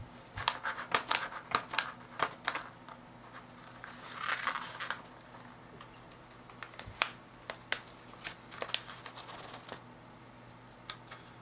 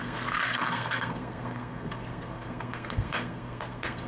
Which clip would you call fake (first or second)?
second